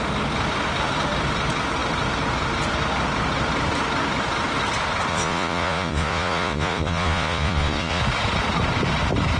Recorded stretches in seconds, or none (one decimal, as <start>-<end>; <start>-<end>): 0.0-5.1; 8.0-9.4